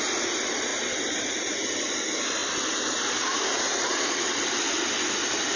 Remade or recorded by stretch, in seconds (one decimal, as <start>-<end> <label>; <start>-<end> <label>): 0.0-0.7 recorded; 0.7-1.3 remade; 1.3-5.6 recorded